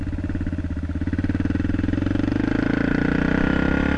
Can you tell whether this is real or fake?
real